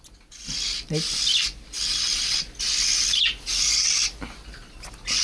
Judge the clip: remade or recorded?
recorded